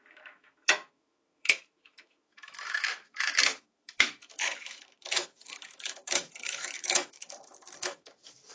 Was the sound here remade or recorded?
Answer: remade